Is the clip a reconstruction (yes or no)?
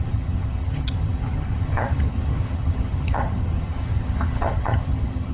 yes